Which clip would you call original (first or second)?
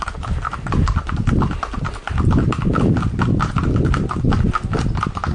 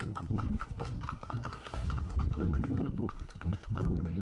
first